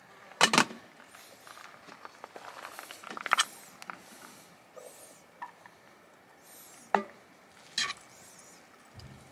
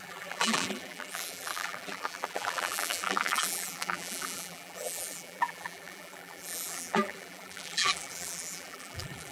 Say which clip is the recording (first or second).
first